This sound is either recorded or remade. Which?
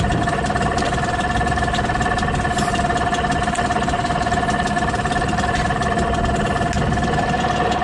recorded